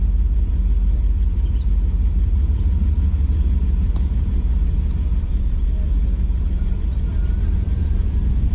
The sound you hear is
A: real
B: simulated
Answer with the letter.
B